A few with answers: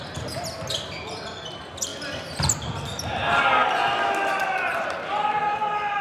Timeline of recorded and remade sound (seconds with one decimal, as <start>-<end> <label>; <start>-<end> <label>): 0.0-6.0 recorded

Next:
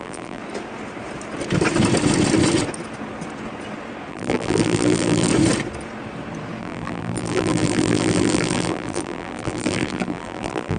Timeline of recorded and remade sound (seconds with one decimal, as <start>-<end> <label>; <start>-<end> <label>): 0.0-0.4 remade; 0.4-4.1 recorded; 4.1-5.3 remade; 5.3-6.6 recorded; 6.6-10.8 remade

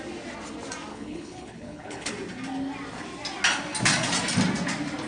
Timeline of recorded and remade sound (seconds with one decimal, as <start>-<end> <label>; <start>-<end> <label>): 0.0-0.9 recorded; 0.9-2.1 remade; 2.1-5.1 recorded